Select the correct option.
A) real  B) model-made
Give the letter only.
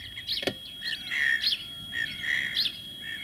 A